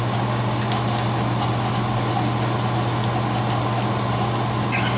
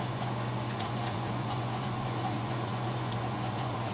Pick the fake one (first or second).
second